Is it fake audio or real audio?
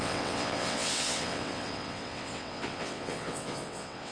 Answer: fake